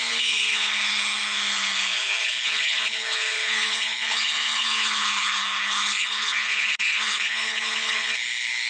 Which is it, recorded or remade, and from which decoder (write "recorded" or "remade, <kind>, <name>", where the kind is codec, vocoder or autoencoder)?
remade, codec, HILCodec